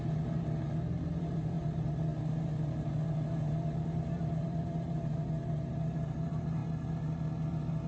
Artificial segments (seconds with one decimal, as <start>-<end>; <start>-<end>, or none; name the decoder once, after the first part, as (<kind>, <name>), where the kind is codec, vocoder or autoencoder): 0.0-6.6 (vocoder, BigVGAN v2); 7.5-7.9